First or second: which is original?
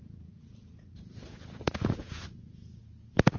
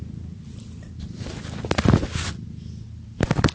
second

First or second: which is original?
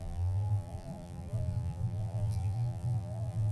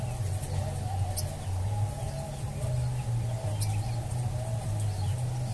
second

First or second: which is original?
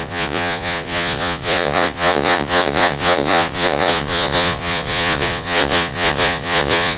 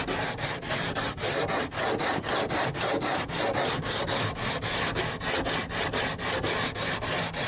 second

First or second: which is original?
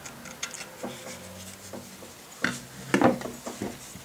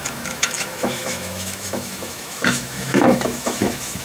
first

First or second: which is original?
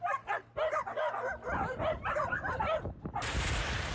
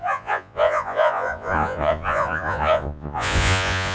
first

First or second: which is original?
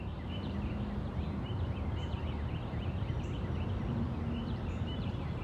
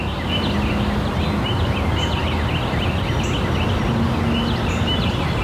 second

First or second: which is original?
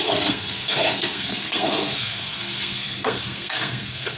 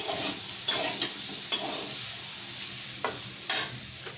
second